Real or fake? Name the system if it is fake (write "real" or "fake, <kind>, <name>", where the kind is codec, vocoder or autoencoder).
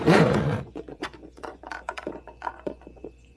fake, vocoder, Vocos